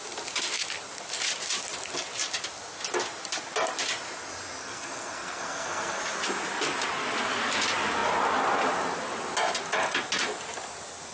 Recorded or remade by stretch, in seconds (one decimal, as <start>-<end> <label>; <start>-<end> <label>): 0.0-4.6 recorded; 4.6-6.0 remade; 6.0-11.1 recorded